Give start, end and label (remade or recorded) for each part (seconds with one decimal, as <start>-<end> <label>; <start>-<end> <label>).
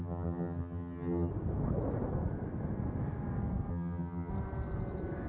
0.0-1.3 remade; 1.3-3.7 recorded; 3.7-4.3 remade; 4.3-5.3 recorded